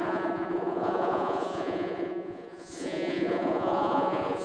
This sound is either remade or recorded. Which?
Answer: remade